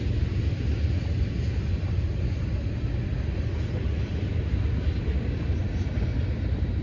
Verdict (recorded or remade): recorded